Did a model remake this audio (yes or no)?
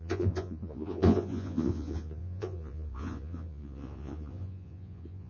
yes